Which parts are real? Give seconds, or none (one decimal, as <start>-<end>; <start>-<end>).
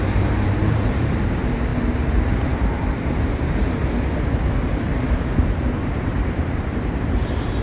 3.8-4.7